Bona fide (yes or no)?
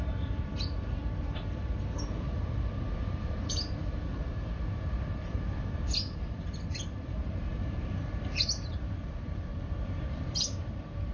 no